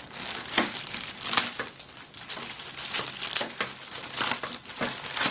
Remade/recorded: recorded